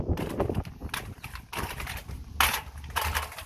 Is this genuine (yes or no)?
yes